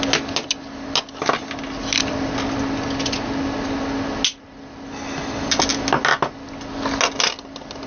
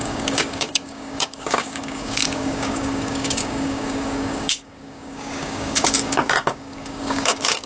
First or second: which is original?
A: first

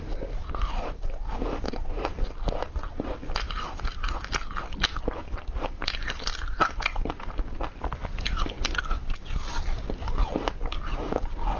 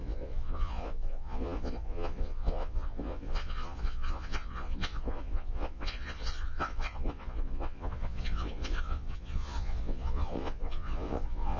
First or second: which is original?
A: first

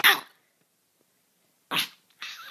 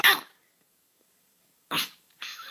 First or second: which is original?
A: first